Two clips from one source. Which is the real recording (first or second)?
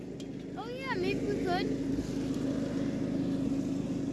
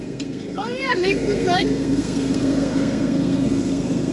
first